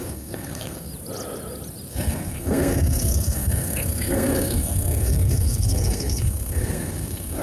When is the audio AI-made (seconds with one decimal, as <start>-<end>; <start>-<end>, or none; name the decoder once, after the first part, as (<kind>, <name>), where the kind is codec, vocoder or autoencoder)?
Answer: 0.0-0.9 (codec, SNAC); 1.9-7.4